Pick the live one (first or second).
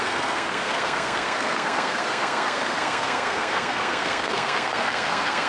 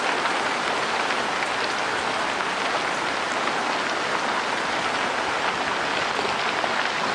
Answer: second